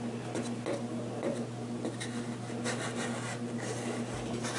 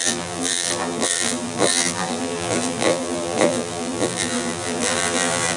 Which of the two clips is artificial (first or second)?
second